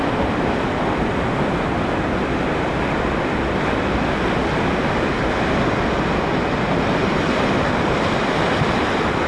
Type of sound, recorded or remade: recorded